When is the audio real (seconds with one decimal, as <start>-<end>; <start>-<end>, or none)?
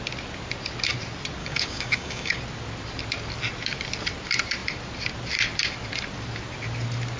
0.0-1.4; 2.4-7.2